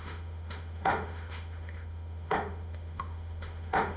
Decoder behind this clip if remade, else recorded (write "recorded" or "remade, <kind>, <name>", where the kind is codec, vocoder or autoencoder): remade, autoencoder, DAC-VAE